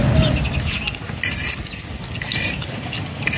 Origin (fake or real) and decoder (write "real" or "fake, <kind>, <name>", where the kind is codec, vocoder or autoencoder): real